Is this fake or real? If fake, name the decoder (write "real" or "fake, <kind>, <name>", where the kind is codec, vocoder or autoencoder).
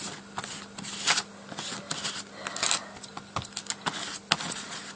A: real